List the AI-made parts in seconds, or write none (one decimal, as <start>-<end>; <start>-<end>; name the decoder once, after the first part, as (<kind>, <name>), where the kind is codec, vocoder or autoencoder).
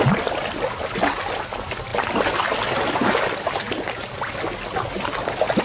none